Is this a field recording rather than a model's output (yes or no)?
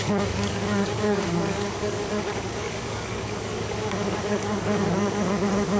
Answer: no